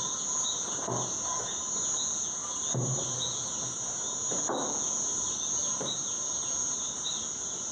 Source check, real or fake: real